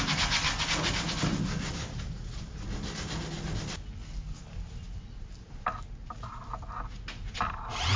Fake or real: real